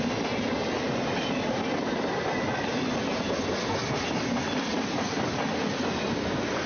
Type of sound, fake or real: real